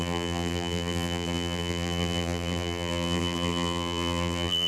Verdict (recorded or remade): remade